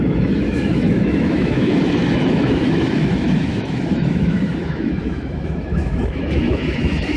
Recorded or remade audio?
remade